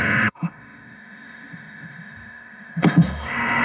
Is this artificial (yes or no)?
yes